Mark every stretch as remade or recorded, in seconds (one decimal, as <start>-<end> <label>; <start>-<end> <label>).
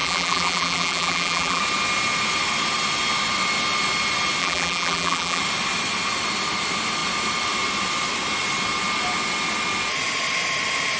0.0-1.6 remade; 1.6-4.4 recorded; 4.4-5.4 remade; 5.4-11.0 recorded